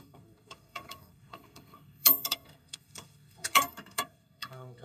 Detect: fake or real fake